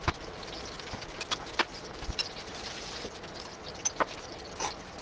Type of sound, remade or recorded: recorded